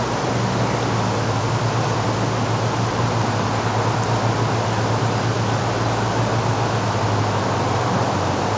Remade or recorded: recorded